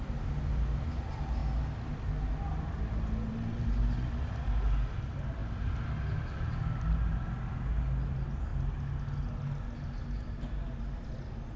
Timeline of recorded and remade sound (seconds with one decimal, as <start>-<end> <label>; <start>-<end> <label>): 0.0-11.6 recorded